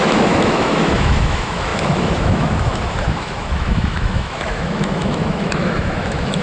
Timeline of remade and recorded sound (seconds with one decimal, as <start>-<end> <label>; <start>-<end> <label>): 0.0-6.4 remade